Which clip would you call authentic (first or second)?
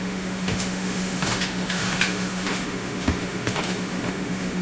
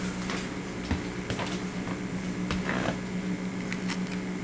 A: second